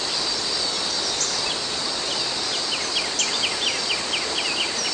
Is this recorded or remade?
recorded